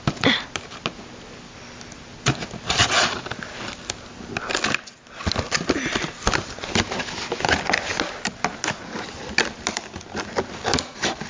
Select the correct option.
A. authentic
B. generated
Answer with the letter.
A